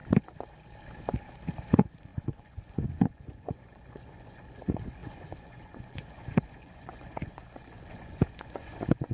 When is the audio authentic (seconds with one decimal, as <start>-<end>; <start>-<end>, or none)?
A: 0.0-1.7